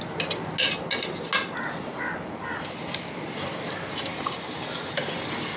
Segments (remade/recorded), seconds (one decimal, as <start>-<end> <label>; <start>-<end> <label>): 0.0-5.6 recorded